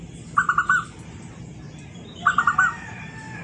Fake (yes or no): no